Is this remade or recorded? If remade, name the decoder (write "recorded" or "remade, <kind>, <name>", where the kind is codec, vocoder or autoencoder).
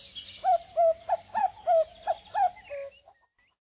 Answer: recorded